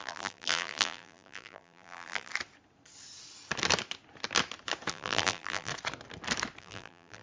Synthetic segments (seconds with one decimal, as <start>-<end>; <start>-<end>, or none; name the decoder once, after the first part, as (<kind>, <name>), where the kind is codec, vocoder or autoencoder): 0.0-2.3 (vocoder, BigVGAN v2); 4.9-5.7; 6.6-7.2